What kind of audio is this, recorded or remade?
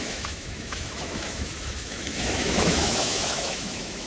remade